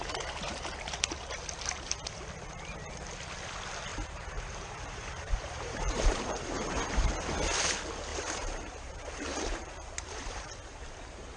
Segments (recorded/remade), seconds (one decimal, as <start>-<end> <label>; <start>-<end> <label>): 0.0-3.9 recorded; 3.9-7.1 remade; 7.1-8.1 recorded; 8.1-10.5 remade; 10.5-11.4 recorded